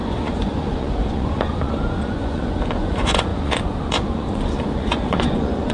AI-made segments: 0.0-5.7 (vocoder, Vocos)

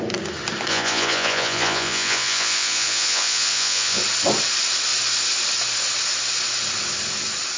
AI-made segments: 0.7-4.0 (vocoder, Vocos)

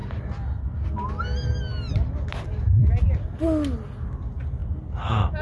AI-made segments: none

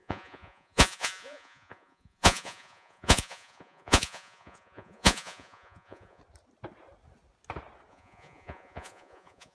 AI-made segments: 0.0-6.2 (vocoder, Vocos); 7.9-9.5

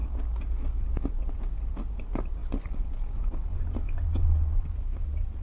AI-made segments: none

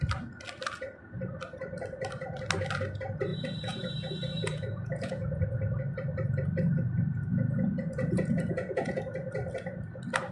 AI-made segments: 3.3-5.8 (vocoder, Vocos); 7.3-9.0

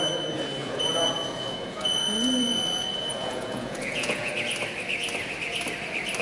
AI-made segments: 0.6-4.3 (vocoder, Vocos)

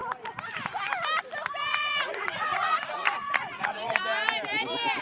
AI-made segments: 1.7-4.0 (vocoder, Vocos)